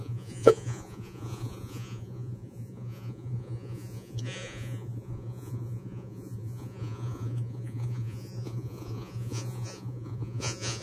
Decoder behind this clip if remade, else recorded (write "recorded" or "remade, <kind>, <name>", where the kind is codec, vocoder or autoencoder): remade, vocoder, Vocos